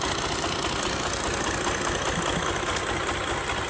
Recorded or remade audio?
recorded